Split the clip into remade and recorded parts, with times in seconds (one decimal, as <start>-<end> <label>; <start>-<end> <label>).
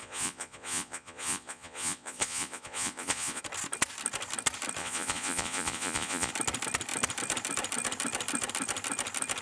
0.0-3.4 remade; 3.4-4.8 recorded; 4.8-6.3 remade; 6.3-9.4 recorded